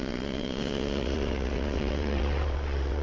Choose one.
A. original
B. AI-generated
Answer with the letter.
B